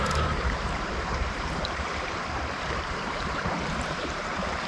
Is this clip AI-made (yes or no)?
yes